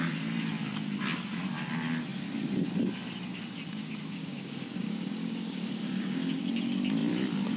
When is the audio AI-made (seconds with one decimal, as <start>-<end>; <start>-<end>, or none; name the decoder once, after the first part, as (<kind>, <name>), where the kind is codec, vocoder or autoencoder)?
4.2-6.5 (codec, DAC)